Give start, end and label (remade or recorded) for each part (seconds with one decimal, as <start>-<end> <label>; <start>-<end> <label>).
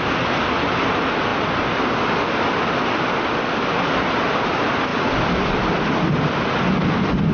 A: 0.0-7.3 recorded